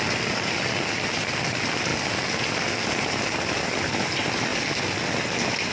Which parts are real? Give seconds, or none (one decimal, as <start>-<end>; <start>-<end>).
0.0-5.7